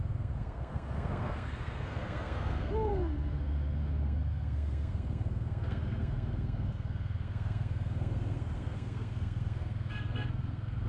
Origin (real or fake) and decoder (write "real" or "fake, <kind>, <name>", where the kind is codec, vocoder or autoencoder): fake, codec, SNAC